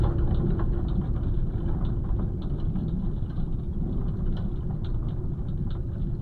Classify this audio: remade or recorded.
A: recorded